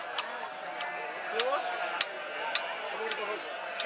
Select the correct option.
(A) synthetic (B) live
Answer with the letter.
B